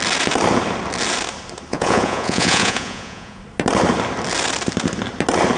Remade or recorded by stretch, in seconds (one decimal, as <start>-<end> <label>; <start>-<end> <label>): 0.0-1.7 recorded; 1.7-3.4 remade; 3.4-5.6 recorded